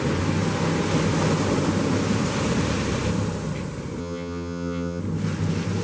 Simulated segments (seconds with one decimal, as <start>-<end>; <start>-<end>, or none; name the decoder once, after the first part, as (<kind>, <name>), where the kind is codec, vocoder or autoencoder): 4.0-5.0 (vocoder, HiFi-GAN)